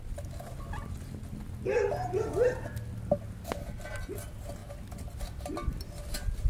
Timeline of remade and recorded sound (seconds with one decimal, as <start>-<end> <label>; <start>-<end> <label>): 0.0-6.5 recorded